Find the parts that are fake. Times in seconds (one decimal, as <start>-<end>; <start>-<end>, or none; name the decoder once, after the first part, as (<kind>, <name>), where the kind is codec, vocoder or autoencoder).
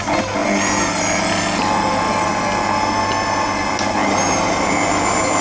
none